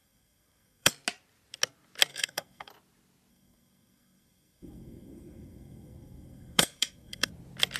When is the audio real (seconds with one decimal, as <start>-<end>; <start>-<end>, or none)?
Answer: 0.9-2.1; 2.7-3.3; 7.3-7.8

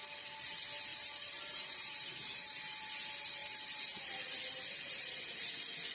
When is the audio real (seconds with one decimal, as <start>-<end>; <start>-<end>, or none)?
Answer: 0.0-0.9; 2.8-3.4; 4.0-5.9